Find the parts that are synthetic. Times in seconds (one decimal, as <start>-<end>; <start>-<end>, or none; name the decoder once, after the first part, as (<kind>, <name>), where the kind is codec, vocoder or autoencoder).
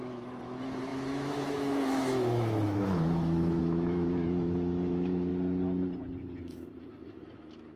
0.0-5.3 (autoencoder, DAC-VAE); 6.4-7.8